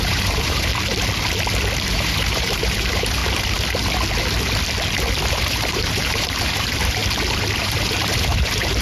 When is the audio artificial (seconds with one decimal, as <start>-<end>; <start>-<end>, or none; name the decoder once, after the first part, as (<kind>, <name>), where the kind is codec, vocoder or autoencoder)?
0.0-0.7 (vocoder, BigVGAN v2); 1.9-3.2; 5.3-7.0; 7.6-8.8